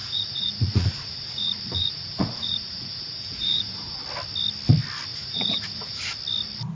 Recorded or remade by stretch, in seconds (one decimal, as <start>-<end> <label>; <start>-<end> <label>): 0.0-4.0 remade; 4.0-5.1 recorded; 5.1-6.1 remade; 6.1-6.8 recorded